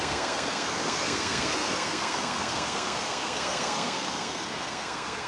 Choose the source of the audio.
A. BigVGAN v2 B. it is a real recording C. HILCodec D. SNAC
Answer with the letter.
D